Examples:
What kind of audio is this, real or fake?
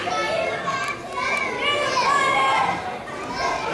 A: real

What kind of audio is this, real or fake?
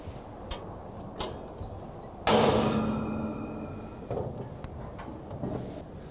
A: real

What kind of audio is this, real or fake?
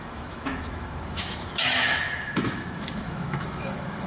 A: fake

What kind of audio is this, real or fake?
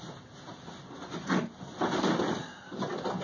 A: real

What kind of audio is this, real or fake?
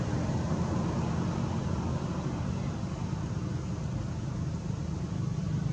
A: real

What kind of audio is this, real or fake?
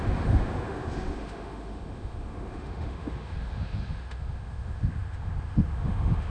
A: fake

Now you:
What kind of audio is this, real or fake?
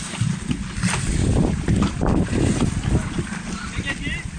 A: real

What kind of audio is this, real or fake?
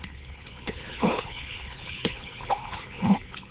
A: fake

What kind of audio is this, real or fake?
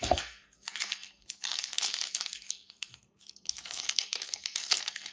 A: fake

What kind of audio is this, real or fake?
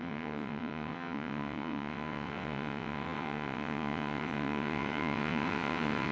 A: fake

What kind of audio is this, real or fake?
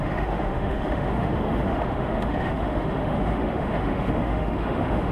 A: fake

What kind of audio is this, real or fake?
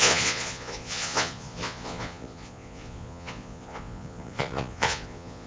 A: fake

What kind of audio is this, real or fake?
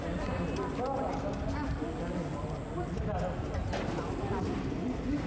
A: real